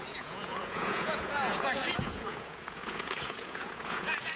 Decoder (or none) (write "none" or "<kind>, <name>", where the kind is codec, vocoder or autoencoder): vocoder, Vocos